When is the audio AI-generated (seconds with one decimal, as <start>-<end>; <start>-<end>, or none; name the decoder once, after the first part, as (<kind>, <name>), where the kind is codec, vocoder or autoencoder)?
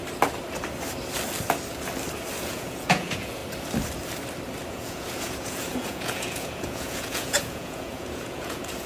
2.4-3.4 (vocoder, Vocos); 4.7-8.9